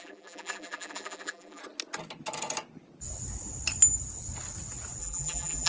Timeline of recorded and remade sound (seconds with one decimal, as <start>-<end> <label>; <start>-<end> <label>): 0.0-1.6 remade; 1.6-5.0 recorded; 5.0-5.7 remade